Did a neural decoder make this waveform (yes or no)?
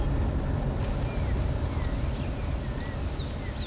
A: no